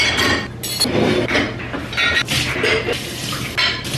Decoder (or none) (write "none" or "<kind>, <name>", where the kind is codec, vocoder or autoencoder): none